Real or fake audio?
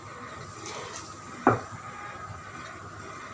real